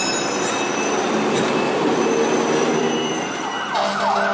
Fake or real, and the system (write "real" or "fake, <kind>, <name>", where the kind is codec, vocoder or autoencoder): real